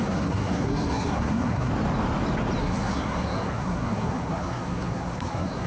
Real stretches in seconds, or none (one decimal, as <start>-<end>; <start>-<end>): 1.7-2.6